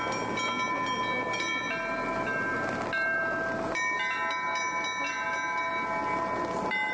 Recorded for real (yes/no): yes